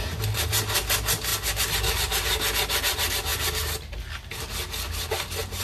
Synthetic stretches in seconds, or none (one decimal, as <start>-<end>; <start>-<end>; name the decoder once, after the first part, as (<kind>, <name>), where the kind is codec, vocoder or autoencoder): none